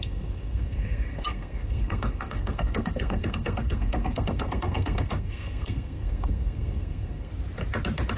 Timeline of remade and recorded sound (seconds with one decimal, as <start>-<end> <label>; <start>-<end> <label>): 0.0-7.3 remade; 7.3-8.2 recorded